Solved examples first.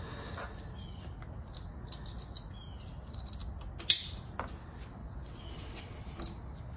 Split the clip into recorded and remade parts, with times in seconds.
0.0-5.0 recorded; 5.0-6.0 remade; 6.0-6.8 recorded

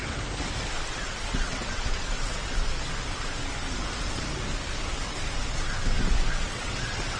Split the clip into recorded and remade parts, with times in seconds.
0.0-1.0 recorded; 1.0-2.4 remade; 2.4-6.4 recorded; 6.4-7.2 remade

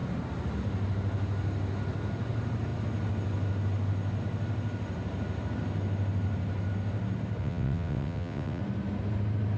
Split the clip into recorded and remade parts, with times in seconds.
0.0-7.4 recorded; 7.4-8.6 remade; 8.6-9.6 recorded

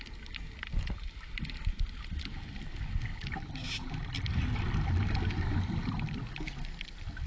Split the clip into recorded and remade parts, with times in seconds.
0.0-7.3 recorded